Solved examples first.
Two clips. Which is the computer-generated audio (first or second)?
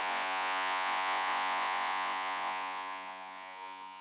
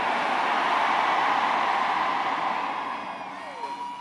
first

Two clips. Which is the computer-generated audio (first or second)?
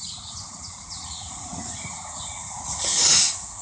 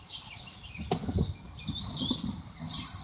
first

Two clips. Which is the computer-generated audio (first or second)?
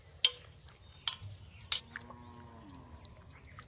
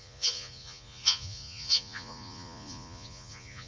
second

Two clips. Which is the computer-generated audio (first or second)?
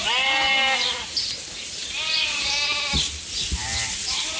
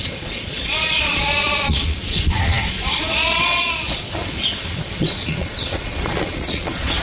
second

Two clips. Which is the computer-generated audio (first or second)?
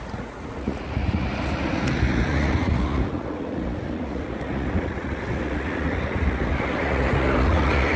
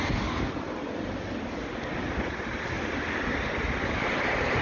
first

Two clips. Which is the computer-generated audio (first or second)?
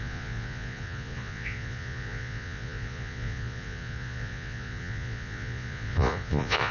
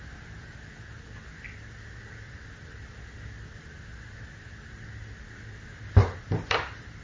first